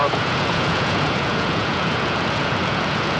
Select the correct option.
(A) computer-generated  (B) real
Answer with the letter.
A